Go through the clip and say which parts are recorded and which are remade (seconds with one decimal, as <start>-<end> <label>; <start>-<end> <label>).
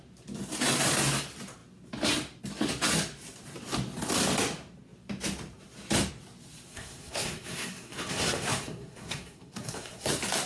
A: 0.0-6.7 recorded; 6.7-10.1 remade; 10.1-10.5 recorded